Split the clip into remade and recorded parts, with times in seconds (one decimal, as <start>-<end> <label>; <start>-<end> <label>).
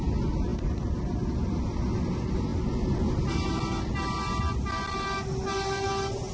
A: 0.0-6.3 recorded